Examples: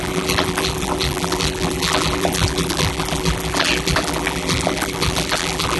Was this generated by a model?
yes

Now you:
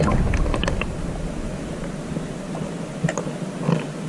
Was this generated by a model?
no